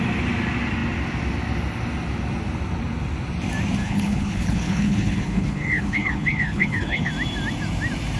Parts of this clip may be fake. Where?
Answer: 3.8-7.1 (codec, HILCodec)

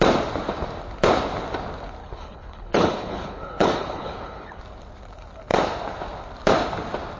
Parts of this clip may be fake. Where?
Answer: 2.0-4.6 (codec, HILCodec)

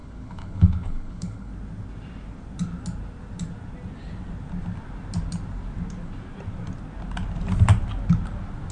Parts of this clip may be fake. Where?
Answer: 0.0-1.5 (codec, HILCodec)

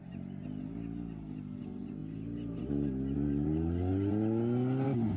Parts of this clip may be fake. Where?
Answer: none

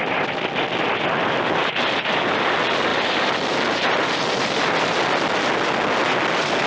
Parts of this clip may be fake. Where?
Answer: none